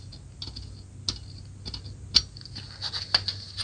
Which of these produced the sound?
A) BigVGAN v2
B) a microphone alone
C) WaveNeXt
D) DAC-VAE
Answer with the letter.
B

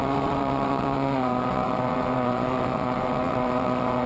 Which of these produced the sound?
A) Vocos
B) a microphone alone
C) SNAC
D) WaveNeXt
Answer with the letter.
D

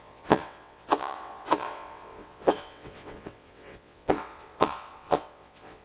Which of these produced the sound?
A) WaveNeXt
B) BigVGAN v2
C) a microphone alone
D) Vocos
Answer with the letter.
A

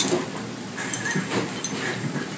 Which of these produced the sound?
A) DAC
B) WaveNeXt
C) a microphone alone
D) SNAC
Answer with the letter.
C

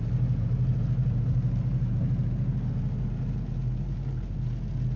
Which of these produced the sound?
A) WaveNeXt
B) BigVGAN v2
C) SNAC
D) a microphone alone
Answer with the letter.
D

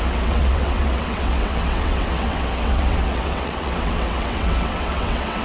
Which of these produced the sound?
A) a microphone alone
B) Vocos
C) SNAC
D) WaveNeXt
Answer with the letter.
D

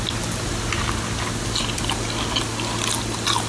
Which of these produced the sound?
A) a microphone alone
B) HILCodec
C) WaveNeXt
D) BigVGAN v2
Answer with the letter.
A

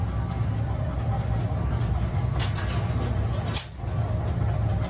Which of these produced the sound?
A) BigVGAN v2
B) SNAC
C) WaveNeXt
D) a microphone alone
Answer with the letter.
D